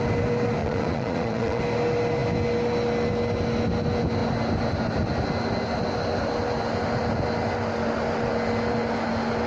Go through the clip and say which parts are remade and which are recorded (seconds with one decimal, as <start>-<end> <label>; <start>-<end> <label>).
0.0-0.6 recorded; 0.6-1.6 remade; 1.6-9.5 recorded